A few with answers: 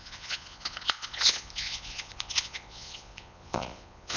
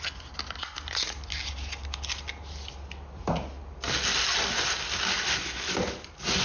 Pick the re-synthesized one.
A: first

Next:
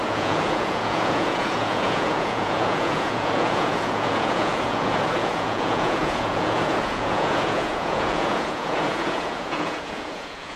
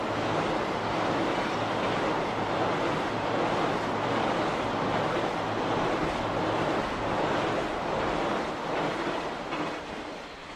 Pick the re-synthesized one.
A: first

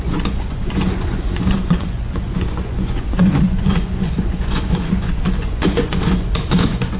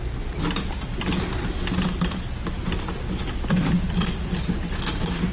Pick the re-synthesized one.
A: first